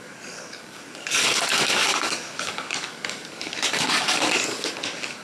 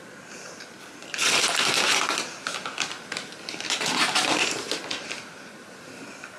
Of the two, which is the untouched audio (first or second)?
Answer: second